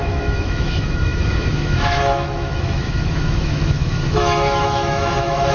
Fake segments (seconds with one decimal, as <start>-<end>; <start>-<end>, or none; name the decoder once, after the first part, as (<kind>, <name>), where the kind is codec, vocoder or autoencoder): 0.0-5.5 (autoencoder, DAC-VAE)